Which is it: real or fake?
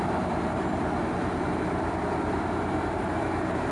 fake